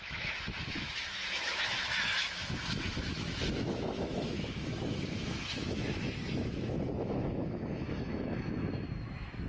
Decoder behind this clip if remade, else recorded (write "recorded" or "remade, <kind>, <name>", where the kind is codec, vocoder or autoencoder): remade, autoencoder, DAC-VAE